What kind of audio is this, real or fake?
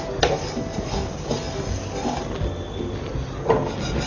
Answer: real